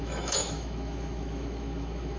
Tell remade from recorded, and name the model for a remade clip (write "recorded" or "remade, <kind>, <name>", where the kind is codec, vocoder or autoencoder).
remade, autoencoder, DAC-VAE